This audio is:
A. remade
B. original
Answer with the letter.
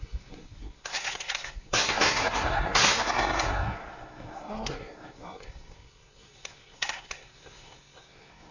A